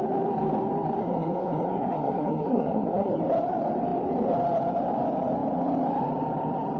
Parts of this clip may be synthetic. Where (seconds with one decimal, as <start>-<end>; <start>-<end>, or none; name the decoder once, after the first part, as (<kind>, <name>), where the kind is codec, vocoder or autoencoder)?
1.0-3.2 (codec, SNAC)